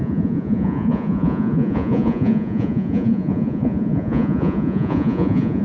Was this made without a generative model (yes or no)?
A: no